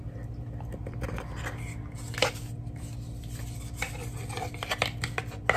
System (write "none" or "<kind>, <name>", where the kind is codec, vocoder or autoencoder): none